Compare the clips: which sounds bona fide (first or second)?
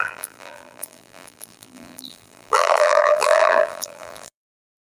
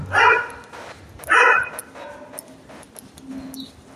second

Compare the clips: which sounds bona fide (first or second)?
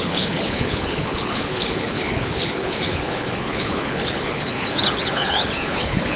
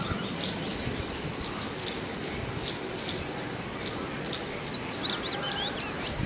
second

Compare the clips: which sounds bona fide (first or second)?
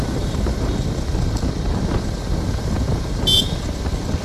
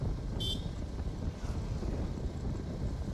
second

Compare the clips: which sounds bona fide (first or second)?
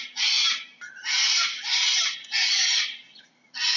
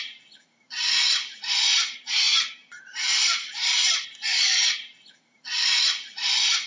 first